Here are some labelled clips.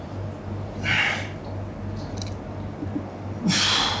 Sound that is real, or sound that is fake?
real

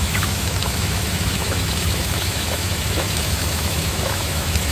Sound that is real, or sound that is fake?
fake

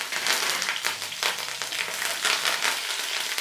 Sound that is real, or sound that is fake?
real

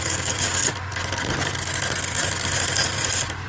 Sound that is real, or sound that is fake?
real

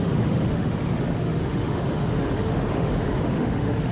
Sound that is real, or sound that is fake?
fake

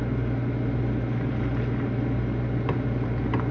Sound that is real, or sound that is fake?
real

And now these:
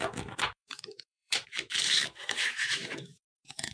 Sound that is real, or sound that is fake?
fake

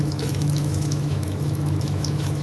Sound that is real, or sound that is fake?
fake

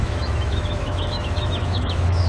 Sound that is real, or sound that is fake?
fake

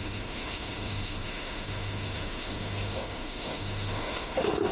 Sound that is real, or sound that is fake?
fake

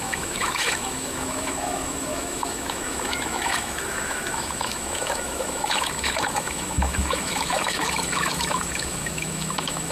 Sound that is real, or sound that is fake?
fake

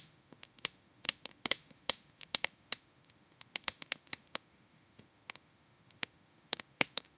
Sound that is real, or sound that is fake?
fake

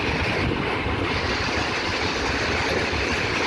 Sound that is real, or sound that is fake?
real